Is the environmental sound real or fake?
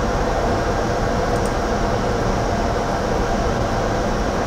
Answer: real